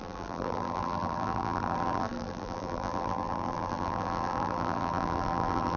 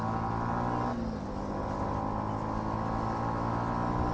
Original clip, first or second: second